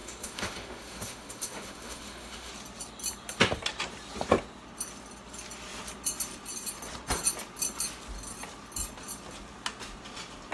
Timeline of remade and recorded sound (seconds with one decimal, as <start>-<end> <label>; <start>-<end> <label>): 0.0-2.5 remade; 2.5-10.5 recorded